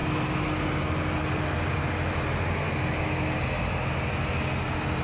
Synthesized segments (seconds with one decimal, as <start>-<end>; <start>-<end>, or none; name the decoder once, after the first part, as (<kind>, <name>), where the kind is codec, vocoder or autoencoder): none